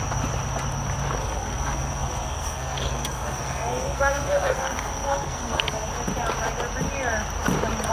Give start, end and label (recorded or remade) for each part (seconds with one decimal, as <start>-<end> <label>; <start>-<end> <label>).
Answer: 0.0-1.2 recorded; 1.2-5.9 remade; 5.9-7.9 recorded